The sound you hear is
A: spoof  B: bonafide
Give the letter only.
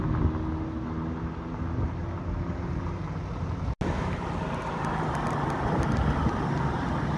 B